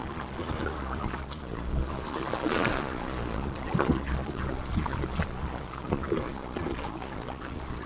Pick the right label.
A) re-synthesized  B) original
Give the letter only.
A